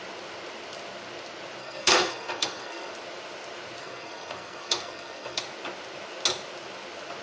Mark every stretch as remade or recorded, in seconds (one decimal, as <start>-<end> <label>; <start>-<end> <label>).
0.0-1.6 recorded; 1.6-2.9 remade; 2.9-3.8 recorded; 3.8-5.4 remade; 5.4-7.2 recorded